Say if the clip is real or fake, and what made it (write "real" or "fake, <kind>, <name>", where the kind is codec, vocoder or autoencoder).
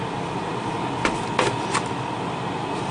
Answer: real